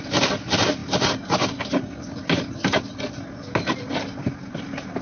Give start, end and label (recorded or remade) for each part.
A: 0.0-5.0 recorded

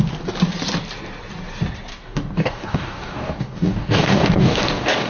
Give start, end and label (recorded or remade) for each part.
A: 0.0-1.9 recorded; 1.9-5.1 remade

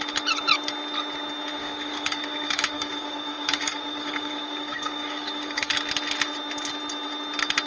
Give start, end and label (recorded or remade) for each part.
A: 0.0-1.6 recorded; 1.6-5.7 remade; 5.7-7.7 recorded

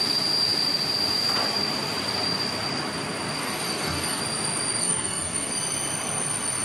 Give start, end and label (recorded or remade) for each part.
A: 0.0-3.4 recorded; 3.4-4.2 remade; 4.2-4.8 recorded; 4.8-5.5 remade; 5.5-6.6 recorded

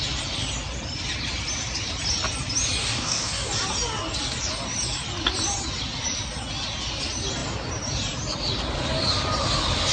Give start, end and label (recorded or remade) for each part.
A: 0.0-2.8 recorded; 2.8-3.5 remade; 3.5-9.9 recorded

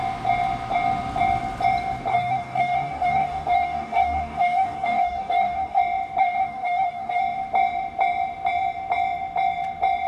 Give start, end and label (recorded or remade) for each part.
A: 0.0-2.1 recorded; 2.1-5.8 remade; 5.8-6.2 recorded; 6.2-7.2 remade; 7.2-10.1 recorded

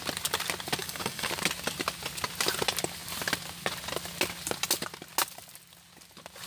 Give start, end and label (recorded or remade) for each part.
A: 0.0-0.8 recorded; 0.8-1.3 remade; 1.3-6.5 recorded

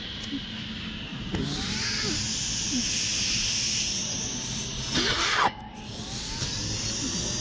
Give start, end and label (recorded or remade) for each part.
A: 0.0-7.4 recorded